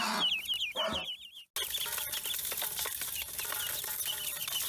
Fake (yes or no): no